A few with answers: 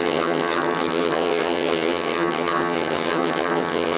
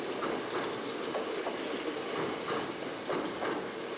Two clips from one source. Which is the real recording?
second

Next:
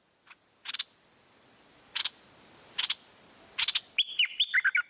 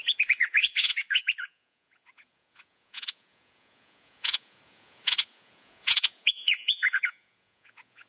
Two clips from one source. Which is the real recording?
first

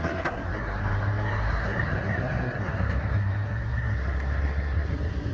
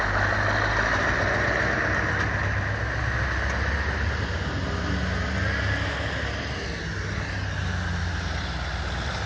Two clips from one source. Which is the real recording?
second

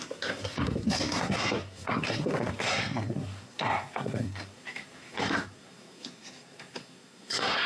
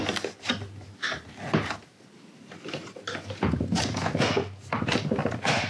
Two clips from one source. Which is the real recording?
second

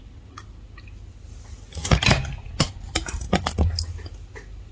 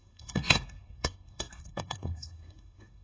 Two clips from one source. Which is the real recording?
first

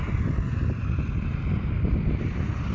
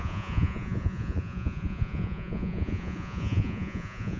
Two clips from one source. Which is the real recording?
first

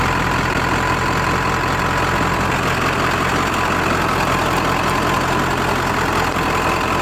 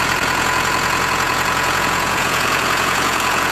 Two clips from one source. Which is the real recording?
first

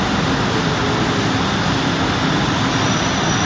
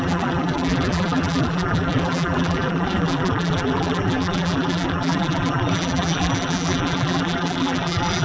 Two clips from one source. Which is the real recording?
first